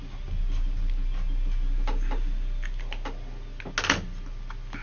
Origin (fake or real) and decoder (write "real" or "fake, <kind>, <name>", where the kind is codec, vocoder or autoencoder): real